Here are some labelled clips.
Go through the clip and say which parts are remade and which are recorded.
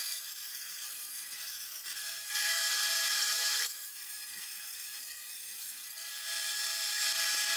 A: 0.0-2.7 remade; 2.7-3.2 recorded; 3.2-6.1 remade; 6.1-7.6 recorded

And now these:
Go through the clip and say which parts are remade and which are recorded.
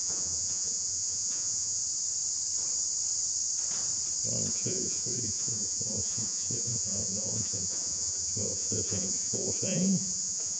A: 0.0-1.8 remade; 1.8-4.5 recorded; 4.5-10.6 remade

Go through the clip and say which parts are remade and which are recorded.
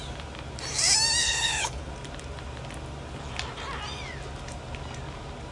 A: 0.0-1.2 recorded; 1.2-1.9 remade; 1.9-5.5 recorded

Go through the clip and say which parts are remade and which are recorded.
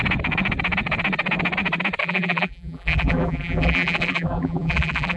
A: 0.0-2.0 recorded; 2.0-5.2 remade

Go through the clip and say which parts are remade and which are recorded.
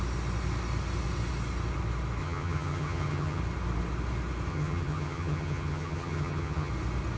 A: 0.0-2.2 recorded; 2.2-3.4 remade; 3.4-4.5 recorded; 4.5-6.7 remade; 6.7-7.2 recorded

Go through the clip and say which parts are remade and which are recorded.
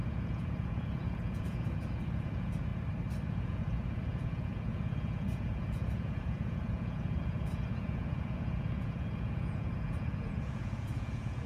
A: 0.0-2.7 remade; 2.7-3.3 recorded; 3.3-11.5 remade